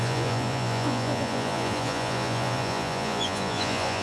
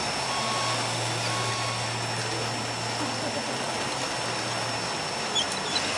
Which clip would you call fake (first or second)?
first